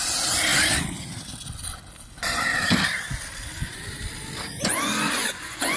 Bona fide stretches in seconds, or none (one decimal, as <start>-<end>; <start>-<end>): 0.0-4.5